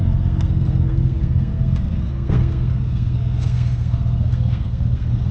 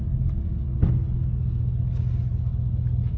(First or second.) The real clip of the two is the second